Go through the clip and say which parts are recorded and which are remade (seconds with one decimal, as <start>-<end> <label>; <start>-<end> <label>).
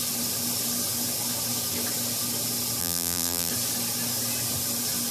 0.0-2.8 recorded; 2.8-3.5 remade; 3.5-5.1 recorded